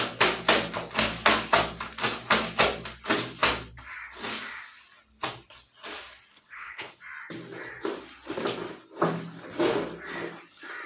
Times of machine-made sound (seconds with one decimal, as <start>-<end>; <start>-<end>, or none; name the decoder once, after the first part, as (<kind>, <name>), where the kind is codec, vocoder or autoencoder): 6.3-7.0 (codec, HILCodec)